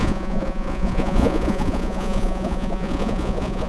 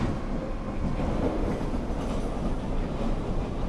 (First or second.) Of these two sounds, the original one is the second